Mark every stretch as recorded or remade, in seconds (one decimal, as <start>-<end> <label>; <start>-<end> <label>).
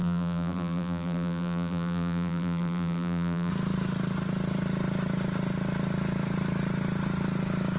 0.0-3.5 remade; 3.5-7.8 recorded